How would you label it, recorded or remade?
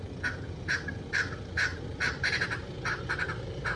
remade